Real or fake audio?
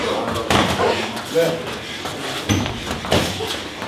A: real